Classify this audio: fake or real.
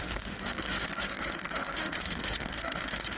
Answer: fake